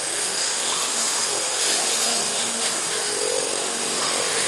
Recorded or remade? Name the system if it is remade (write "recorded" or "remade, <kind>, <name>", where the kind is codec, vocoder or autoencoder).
remade, autoencoder, DAC-VAE